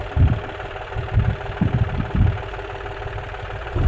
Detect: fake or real real